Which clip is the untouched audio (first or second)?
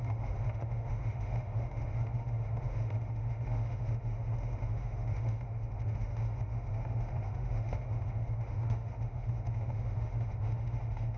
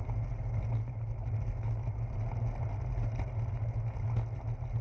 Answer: second